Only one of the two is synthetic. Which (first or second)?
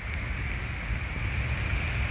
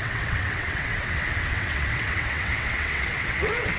second